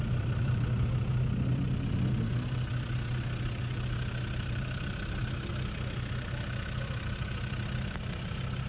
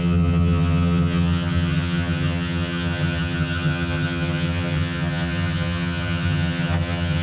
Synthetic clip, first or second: second